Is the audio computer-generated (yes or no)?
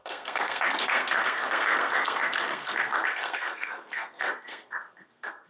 yes